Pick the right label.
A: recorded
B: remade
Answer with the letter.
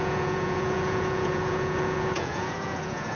B